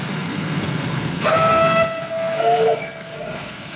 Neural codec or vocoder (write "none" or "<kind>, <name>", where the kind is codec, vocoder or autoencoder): codec, SNAC